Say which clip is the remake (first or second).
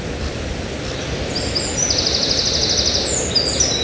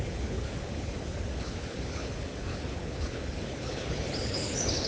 second